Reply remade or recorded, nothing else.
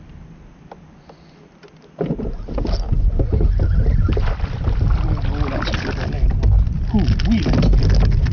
recorded